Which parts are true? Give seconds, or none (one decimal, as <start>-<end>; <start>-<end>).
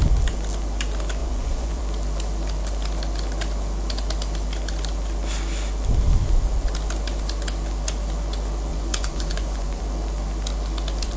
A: 0.0-1.2; 1.8-8.7; 9.8-11.2